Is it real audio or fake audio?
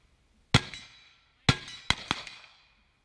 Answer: real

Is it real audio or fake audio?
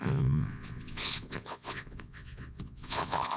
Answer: fake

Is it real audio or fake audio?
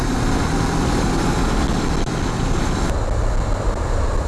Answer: real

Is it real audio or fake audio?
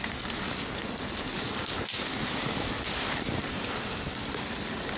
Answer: real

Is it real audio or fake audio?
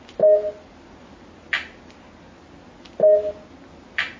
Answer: real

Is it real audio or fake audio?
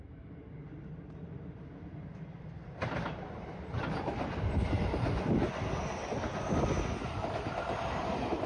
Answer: real